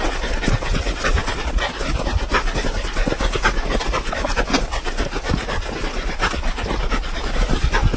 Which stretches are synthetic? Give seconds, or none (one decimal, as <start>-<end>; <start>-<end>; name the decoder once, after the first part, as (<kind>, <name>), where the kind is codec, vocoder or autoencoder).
none